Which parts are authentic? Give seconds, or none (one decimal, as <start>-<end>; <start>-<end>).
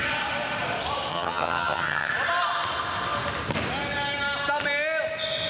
0.0-1.1; 2.1-5.5